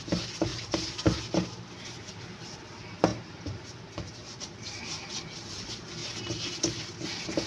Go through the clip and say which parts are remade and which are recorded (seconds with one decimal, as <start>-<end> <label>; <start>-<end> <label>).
0.0-0.5 recorded; 0.5-2.4 remade; 2.4-3.1 recorded; 3.1-4.8 remade; 4.8-7.5 recorded